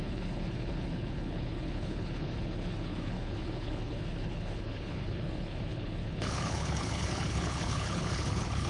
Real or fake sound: fake